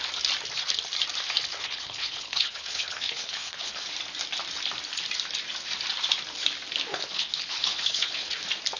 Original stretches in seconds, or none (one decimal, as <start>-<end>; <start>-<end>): 0.0-1.5; 3.9-6.9; 8.4-8.8